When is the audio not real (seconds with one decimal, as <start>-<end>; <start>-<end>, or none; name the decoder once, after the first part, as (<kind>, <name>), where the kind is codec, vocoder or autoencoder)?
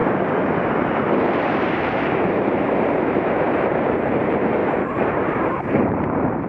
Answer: 1.4-4.6 (vocoder, BigVGAN v2); 5.3-6.5